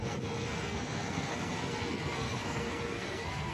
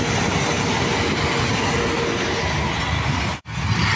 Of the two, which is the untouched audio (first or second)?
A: second